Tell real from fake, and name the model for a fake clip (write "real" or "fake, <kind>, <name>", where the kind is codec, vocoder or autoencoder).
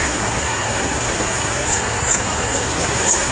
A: fake, codec, SNAC